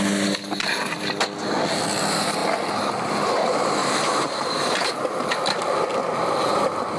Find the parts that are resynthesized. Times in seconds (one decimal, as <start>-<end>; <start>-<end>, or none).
3.8-4.9